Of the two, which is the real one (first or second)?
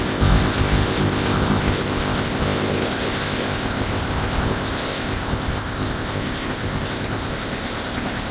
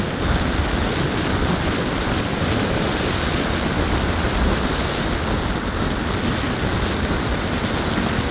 second